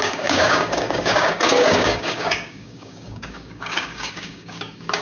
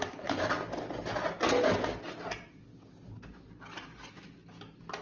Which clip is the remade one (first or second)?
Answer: first